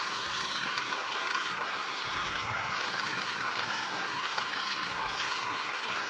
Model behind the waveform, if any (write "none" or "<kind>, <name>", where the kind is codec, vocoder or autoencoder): codec, SNAC